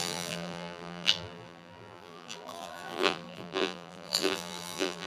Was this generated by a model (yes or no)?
yes